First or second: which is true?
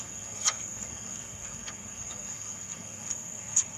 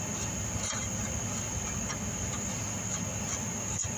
second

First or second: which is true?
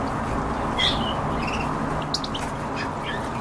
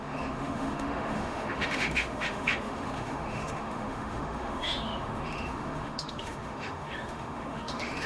first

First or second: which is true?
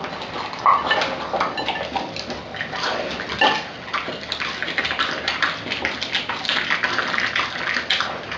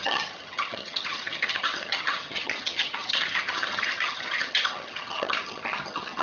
first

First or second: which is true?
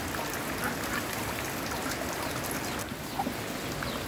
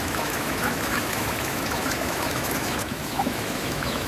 first